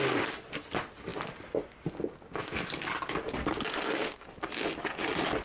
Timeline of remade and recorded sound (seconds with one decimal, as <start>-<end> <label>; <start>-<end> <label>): 0.0-5.4 recorded